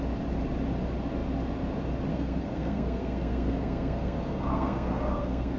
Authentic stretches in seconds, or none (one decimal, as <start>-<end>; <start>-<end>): 0.0-2.1